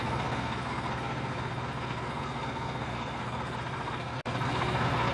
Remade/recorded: remade